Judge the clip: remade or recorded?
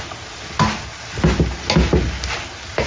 recorded